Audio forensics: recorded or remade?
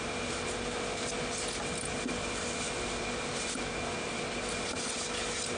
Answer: recorded